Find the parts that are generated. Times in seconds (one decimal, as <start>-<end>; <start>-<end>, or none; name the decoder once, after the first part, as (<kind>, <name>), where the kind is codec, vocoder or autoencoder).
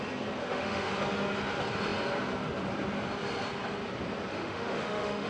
0.4-0.9 (autoencoder, DAC-VAE); 4.3-5.3